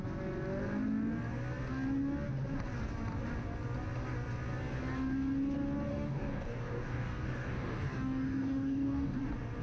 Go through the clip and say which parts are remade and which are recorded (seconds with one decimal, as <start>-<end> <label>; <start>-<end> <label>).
0.0-5.9 recorded; 5.9-9.2 remade; 9.2-9.6 recorded